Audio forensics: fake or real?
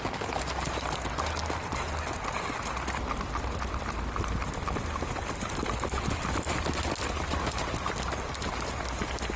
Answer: real